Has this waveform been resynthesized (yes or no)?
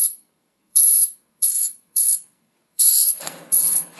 yes